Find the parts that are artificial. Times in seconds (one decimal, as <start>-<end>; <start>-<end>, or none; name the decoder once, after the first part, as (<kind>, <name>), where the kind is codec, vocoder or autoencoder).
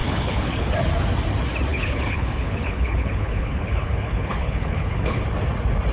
0.0-0.7 (codec, HILCodec); 1.7-5.2